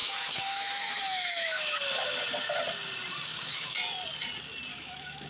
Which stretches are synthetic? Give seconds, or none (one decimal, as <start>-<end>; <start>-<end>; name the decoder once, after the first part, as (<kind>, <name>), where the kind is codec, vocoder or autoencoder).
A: 0.0-1.8 (autoencoder, DAC-VAE); 3.3-3.8; 4.7-5.3